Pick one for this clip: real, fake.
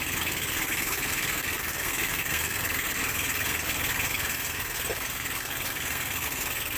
fake